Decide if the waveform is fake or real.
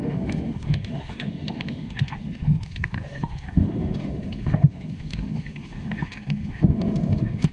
fake